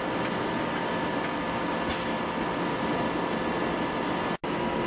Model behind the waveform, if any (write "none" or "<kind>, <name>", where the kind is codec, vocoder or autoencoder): none